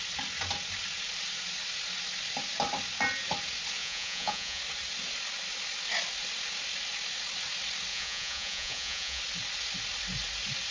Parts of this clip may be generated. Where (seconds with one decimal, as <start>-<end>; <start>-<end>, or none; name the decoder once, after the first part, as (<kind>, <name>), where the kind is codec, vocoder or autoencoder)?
3.8-4.6 (vocoder, Vocos); 7.9-9.2